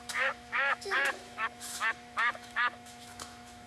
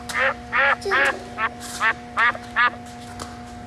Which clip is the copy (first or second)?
first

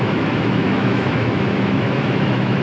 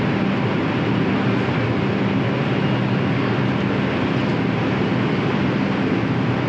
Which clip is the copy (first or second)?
first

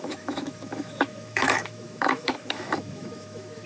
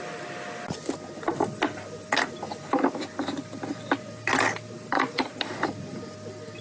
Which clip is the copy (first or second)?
first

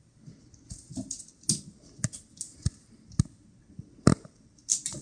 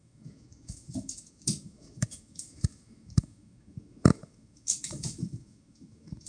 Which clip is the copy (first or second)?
second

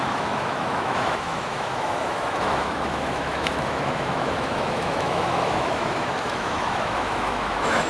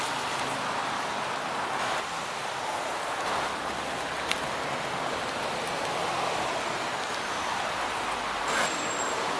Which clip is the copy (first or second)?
first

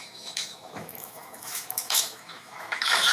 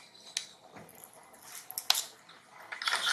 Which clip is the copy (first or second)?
first